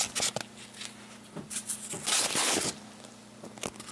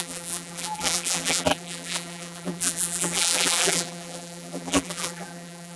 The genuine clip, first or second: first